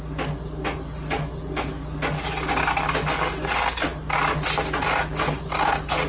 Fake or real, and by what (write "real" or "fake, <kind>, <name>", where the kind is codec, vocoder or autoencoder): real